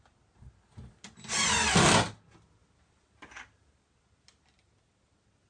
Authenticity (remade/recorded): recorded